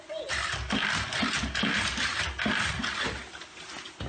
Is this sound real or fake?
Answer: real